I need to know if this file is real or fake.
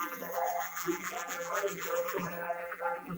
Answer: fake